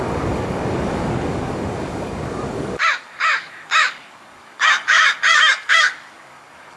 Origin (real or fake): fake